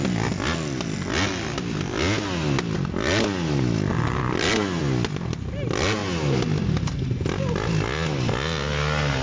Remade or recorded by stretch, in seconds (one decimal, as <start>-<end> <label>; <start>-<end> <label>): 0.0-9.2 recorded